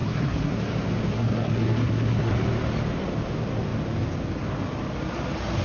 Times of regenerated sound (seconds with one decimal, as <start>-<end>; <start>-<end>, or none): 0.0-0.6; 1.1-2.3